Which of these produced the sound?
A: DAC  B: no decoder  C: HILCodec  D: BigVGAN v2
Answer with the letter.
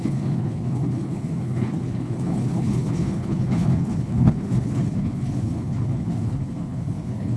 C